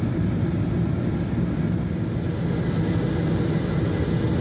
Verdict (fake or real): real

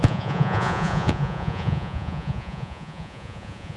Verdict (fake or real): fake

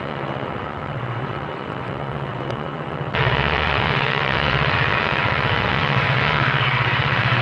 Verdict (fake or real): fake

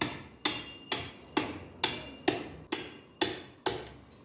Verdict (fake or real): real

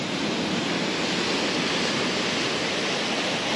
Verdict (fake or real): real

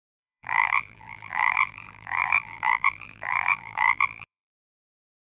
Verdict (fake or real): fake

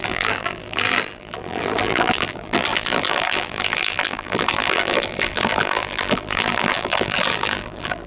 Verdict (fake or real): fake